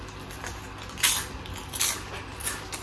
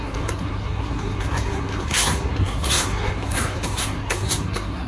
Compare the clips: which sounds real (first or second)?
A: first